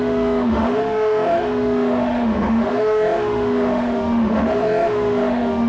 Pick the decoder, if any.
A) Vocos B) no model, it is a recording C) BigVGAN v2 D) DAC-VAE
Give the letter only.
D